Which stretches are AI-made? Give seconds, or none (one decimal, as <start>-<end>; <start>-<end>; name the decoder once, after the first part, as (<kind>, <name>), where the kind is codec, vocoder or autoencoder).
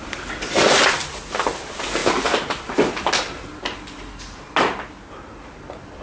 none